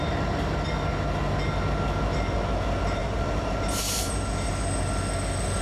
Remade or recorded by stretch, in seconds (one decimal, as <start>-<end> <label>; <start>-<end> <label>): 0.0-3.0 recorded; 3.0-4.5 remade; 4.5-5.6 recorded